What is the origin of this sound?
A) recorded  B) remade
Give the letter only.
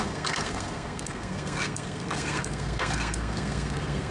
B